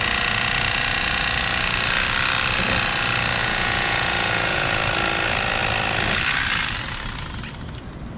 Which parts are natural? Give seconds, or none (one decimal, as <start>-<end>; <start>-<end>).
0.0-3.4; 4.8-8.2